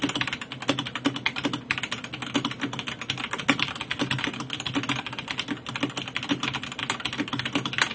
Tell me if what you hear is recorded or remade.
recorded